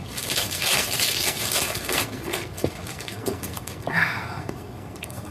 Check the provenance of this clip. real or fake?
fake